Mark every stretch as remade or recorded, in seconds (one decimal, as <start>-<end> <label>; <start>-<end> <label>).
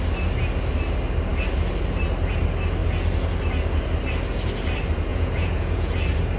0.0-5.1 recorded; 5.1-5.9 remade; 5.9-6.4 recorded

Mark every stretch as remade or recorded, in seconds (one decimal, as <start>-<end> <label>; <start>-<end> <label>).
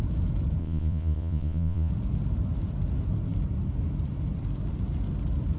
0.0-0.6 recorded; 0.6-1.9 remade; 1.9-5.6 recorded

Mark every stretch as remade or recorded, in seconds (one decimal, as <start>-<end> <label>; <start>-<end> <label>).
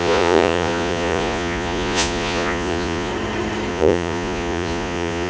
0.0-3.1 remade; 3.1-3.7 recorded; 3.7-5.3 remade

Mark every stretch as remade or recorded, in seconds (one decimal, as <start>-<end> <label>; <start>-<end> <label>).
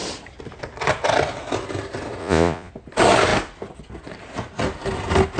0.0-2.2 recorded; 2.2-2.7 remade; 2.7-5.4 recorded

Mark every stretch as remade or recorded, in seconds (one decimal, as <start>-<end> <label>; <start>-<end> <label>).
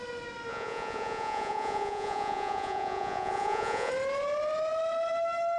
0.0-0.5 recorded; 0.5-3.9 remade; 3.9-5.6 recorded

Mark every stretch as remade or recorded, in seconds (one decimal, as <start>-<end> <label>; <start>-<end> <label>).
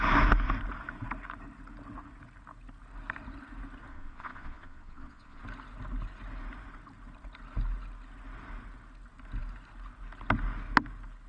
0.0-3.9 recorded; 3.9-5.4 remade; 5.4-11.3 recorded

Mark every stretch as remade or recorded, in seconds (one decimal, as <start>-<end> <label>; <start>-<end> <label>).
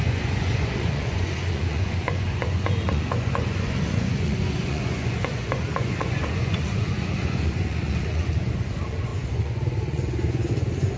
0.0-11.0 remade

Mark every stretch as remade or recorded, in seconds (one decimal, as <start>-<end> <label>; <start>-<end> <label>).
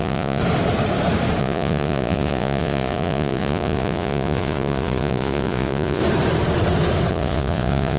0.0-0.4 remade; 0.4-1.4 recorded; 1.4-6.0 remade; 6.0-7.1 recorded; 7.1-8.0 remade